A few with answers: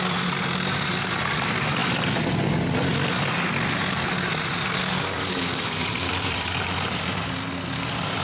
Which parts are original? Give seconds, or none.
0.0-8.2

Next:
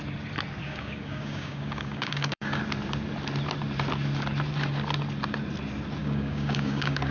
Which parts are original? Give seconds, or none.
0.0-0.6; 2.6-6.0

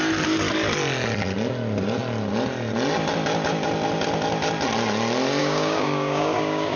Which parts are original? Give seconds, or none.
0.0-5.4

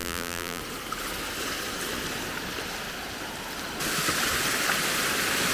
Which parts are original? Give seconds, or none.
0.6-5.5

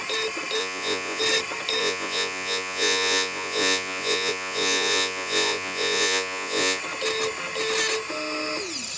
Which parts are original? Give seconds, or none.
0.0-0.6; 1.2-1.8; 6.8-9.0